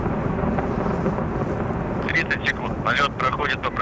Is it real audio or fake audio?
real